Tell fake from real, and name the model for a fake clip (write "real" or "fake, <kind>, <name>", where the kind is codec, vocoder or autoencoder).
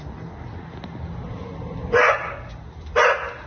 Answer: real